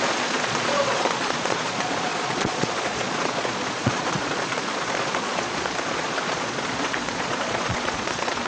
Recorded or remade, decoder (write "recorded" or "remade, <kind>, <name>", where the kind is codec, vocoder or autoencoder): remade, vocoder, Vocos